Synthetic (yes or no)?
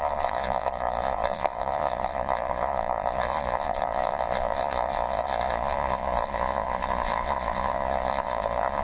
yes